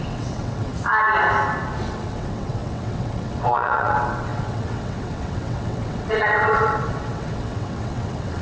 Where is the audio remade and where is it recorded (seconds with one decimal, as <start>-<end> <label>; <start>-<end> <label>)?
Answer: 0.0-0.7 remade; 0.7-1.8 recorded; 1.8-8.4 remade